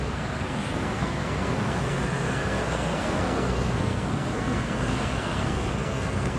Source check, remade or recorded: remade